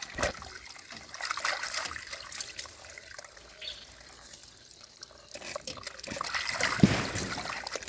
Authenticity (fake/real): real